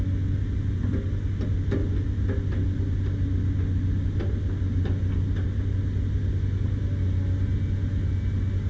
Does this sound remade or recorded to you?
recorded